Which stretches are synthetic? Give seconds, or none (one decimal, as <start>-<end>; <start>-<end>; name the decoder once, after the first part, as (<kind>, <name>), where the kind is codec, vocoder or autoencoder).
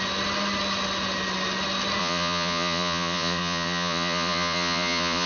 2.0-5.3 (vocoder, Vocos)